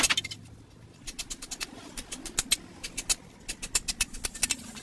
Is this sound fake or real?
real